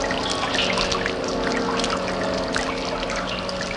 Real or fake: real